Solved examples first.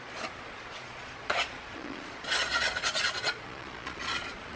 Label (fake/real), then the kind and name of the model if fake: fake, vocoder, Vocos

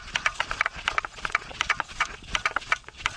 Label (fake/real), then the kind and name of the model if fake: fake, vocoder, Vocos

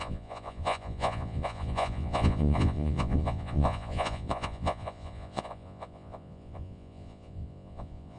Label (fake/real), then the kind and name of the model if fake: fake, vocoder, Vocos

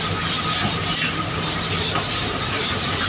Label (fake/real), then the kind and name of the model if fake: real